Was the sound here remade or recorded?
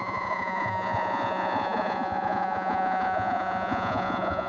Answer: remade